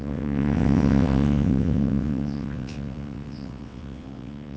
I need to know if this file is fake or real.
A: fake